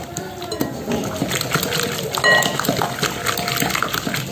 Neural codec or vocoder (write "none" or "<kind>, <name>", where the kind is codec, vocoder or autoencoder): none